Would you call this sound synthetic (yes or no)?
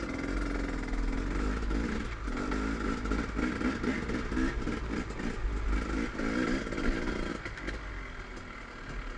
no